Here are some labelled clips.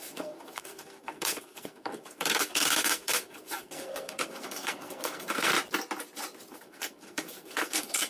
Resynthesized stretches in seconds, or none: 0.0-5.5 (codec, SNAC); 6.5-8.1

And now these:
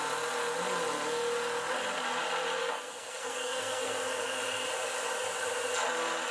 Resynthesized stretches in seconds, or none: 2.6-4.4 (codec, SNAC)

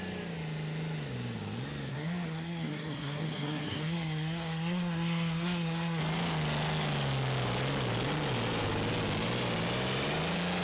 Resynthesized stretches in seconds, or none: 1.9-6.0 (codec, SNAC)

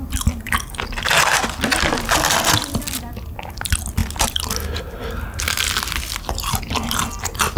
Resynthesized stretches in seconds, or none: none

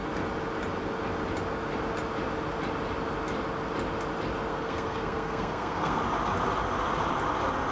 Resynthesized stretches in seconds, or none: 4.5-6.0 (codec, SNAC)

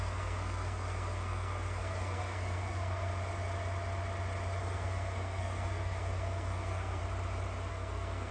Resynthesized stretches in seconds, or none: 0.0-3.1 (codec, SNAC); 4.6-7.0; 7.7-8.3